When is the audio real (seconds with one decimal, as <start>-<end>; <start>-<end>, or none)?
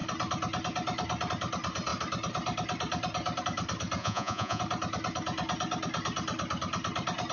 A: 0.0-4.0; 4.6-7.3